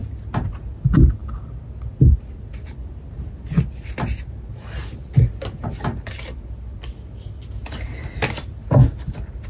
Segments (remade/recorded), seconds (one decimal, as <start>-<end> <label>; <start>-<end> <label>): 0.0-9.5 recorded